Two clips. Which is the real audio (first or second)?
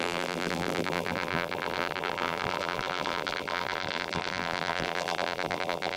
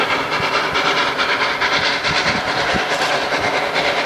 second